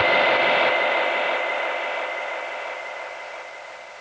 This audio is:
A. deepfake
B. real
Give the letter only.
B